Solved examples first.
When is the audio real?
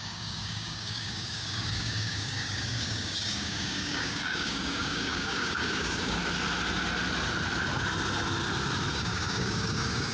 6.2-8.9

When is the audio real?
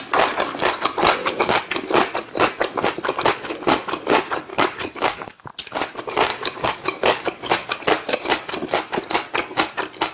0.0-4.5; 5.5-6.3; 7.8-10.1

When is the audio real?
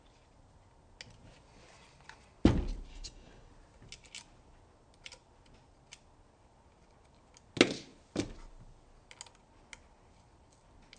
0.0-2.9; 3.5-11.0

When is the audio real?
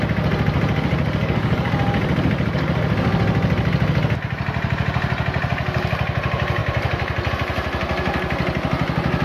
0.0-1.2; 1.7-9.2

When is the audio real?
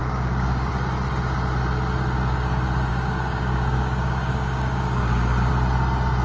0.7-2.9; 5.5-6.2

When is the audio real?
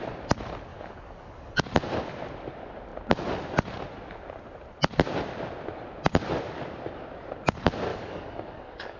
0.0-0.7; 1.6-7.9